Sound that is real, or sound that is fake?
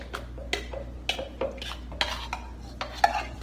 real